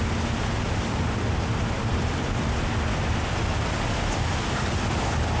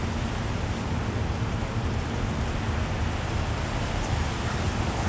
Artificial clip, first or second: first